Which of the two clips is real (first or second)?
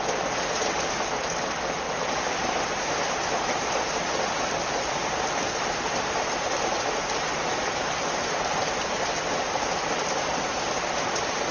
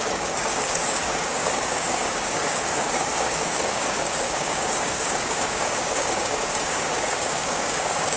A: first